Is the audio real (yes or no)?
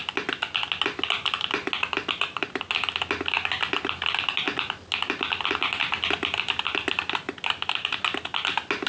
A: yes